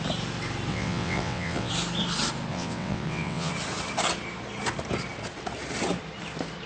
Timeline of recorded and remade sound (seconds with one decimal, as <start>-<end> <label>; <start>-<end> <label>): 0.0-0.7 recorded; 0.7-1.7 remade; 1.7-2.5 recorded; 2.5-3.5 remade; 3.5-6.7 recorded